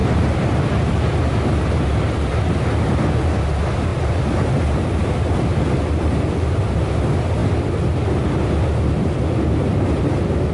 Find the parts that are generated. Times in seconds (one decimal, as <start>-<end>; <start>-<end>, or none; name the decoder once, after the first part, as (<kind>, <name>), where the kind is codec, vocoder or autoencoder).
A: 0.0-0.7 (vocoder, BigVGAN v2); 3.9-6.9